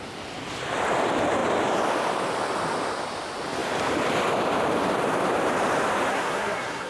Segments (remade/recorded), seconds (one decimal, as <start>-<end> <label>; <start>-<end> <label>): 0.0-6.1 recorded; 6.1-6.9 remade